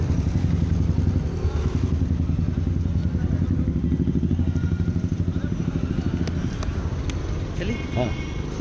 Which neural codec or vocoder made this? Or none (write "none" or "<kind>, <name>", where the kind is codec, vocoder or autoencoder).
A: none